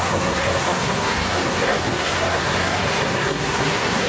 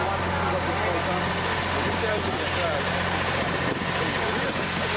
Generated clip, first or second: first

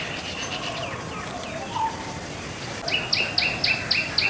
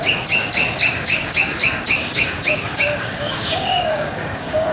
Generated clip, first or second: second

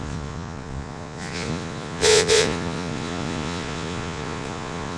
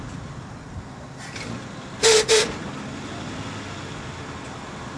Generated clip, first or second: first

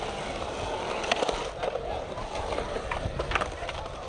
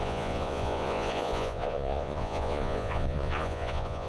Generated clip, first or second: second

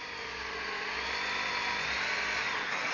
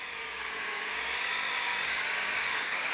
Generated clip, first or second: second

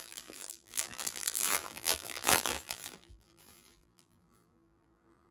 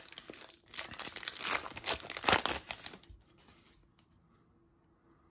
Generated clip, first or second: first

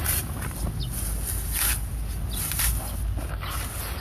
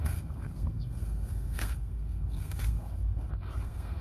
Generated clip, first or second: second